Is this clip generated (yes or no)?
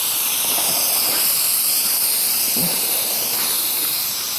no